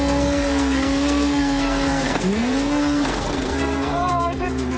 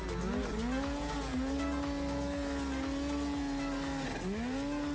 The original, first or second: second